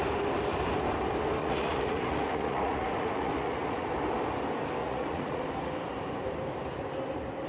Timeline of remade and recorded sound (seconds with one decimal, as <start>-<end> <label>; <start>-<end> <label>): 0.0-1.4 recorded; 1.4-3.9 remade; 3.9-4.8 recorded; 4.8-5.4 remade; 5.4-7.5 recorded